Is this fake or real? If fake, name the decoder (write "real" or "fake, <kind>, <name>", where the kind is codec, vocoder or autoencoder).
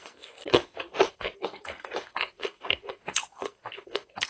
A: fake, codec, SNAC